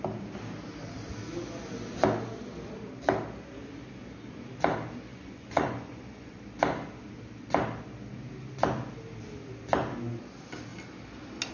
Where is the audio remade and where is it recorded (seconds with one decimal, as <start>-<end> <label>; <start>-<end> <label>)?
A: 0.0-5.1 recorded; 5.1-6.4 remade; 6.4-11.5 recorded